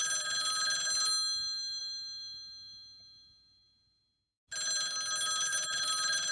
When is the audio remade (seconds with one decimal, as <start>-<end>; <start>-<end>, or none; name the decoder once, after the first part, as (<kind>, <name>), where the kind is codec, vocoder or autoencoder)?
5.5-6.3 (vocoder, BigVGAN v2)

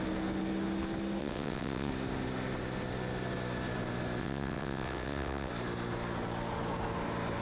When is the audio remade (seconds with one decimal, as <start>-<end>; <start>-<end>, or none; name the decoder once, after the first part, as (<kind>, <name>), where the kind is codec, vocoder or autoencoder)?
1.2-1.9 (vocoder, WaveNeXt); 4.2-5.5

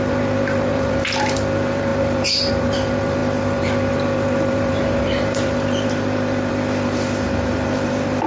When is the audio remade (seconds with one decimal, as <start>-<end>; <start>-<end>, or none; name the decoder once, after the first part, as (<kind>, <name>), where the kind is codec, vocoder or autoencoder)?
0.0-8.3 (vocoder, BigVGAN v2)

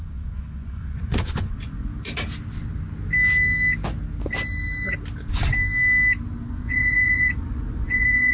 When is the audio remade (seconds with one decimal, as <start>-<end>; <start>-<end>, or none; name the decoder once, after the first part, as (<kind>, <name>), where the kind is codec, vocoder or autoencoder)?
0.0-1.9 (vocoder, Vocos); 6.5-8.3

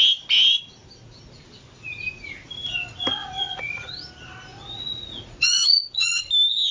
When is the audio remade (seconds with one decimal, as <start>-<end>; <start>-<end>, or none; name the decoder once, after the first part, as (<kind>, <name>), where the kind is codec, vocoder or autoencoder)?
3.2-3.9 (vocoder, Vocos); 4.5-6.3

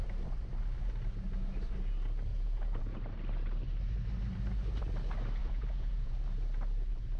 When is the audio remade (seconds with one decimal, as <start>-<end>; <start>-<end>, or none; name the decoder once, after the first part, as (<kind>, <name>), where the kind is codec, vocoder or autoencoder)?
2.3-3.0 (vocoder, Vocos); 5.4-6.1